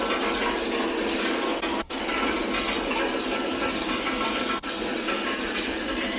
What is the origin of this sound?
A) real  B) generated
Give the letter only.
A